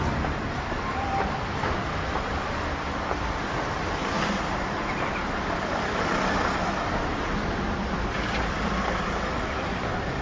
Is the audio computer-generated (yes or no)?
yes